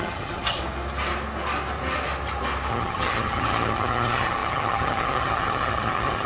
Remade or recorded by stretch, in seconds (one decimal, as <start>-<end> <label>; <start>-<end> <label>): 0.0-0.6 remade; 0.6-2.7 recorded; 2.7-6.3 remade